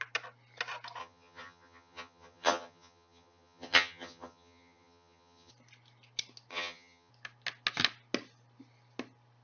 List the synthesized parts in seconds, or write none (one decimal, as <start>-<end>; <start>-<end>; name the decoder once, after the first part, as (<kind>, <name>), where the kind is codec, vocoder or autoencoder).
1.0-5.5 (vocoder, HiFi-GAN); 6.5-7.1